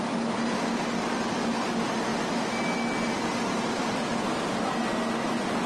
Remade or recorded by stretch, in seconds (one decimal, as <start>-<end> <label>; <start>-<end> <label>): 0.0-5.7 recorded